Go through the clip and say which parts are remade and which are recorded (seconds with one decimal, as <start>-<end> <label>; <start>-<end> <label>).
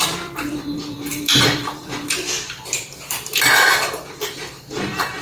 0.0-3.3 remade; 3.3-4.2 recorded; 4.2-5.2 remade